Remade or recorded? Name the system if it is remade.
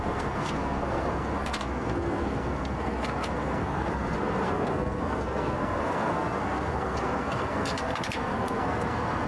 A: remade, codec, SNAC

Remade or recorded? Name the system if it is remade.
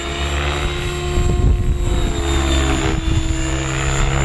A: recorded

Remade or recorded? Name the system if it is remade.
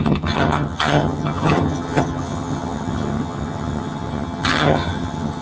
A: remade, vocoder, HiFi-GAN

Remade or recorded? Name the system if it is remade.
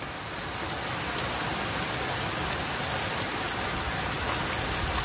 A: recorded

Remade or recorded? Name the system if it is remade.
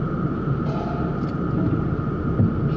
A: recorded